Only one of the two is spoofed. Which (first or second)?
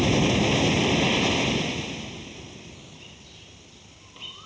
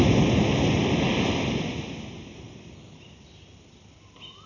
first